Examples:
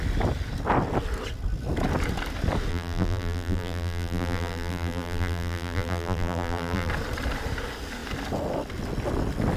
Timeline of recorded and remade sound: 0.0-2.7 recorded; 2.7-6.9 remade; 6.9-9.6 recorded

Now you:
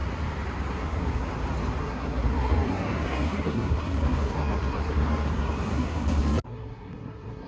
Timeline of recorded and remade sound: 0.0-0.7 recorded; 0.7-1.3 remade; 1.3-1.8 recorded; 1.8-7.5 remade

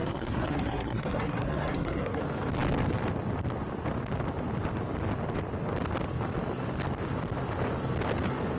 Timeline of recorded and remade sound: 0.0-2.2 remade; 2.2-8.6 recorded

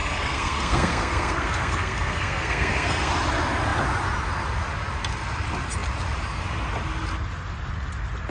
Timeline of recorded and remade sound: 0.0-3.1 remade; 3.1-8.3 recorded

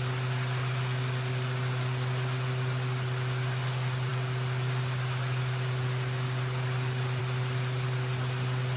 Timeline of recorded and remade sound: 0.0-8.8 recorded